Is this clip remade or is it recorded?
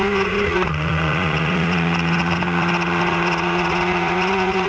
remade